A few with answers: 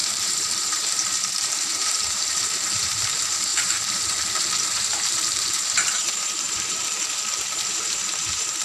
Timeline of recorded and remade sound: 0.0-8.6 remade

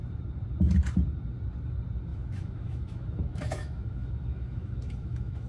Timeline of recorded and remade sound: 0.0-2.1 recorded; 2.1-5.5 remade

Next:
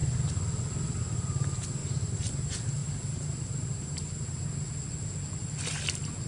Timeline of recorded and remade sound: 0.0-1.8 recorded; 1.8-2.3 remade; 2.3-2.8 recorded; 2.8-4.7 remade; 4.7-6.3 recorded

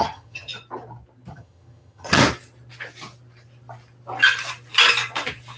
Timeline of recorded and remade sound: 0.0-0.5 remade; 0.5-1.3 recorded; 1.3-2.2 remade; 2.2-5.6 recorded

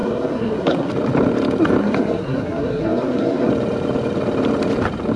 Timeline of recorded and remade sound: 0.0-0.9 remade; 0.9-1.8 recorded; 1.8-3.5 remade; 3.5-5.2 recorded

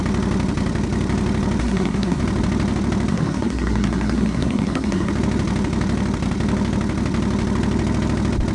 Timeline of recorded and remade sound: 0.0-1.6 recorded; 1.6-2.2 remade; 2.2-3.1 recorded; 3.1-5.1 remade; 5.1-8.5 recorded